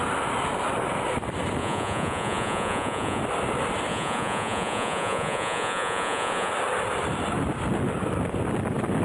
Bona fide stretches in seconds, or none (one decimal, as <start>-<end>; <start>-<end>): 0.0-1.6; 3.2-3.9; 6.5-9.0